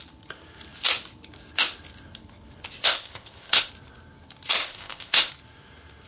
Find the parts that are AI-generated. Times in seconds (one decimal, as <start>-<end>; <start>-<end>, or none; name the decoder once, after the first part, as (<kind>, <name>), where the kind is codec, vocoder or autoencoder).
2.8-3.7 (codec, ZipCodec); 4.6-5.3